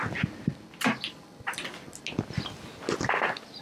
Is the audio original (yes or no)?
yes